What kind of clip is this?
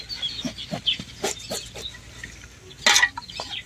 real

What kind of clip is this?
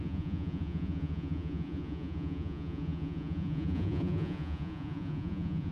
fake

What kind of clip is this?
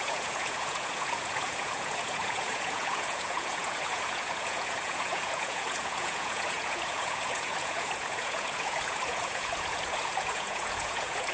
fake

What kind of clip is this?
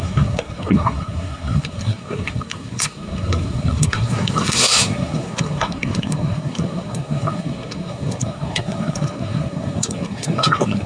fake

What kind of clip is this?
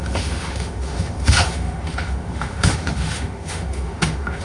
fake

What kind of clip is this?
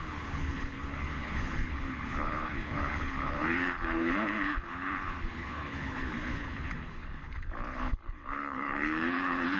fake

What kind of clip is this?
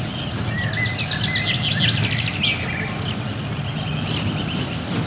real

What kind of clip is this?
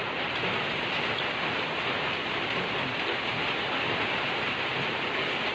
real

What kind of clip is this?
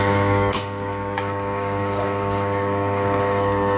fake